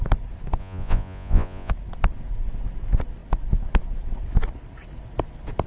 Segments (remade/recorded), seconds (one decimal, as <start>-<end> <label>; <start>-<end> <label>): 0.0-0.6 recorded; 0.6-1.7 remade; 1.7-5.7 recorded